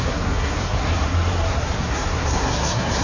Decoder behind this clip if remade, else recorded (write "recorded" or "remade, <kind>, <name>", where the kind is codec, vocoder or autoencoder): remade, codec, SNAC